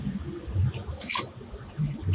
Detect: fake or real real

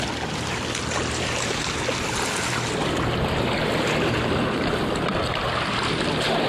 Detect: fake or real real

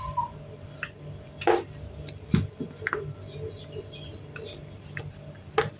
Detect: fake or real real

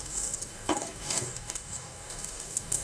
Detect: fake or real fake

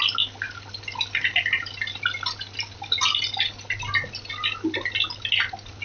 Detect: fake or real real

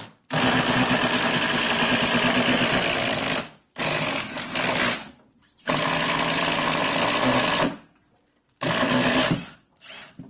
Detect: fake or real real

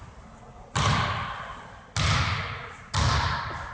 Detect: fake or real real